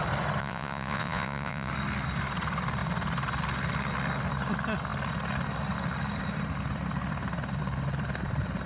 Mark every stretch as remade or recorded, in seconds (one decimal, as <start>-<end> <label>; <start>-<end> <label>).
0.0-0.4 recorded; 0.4-1.7 remade; 1.7-8.7 recorded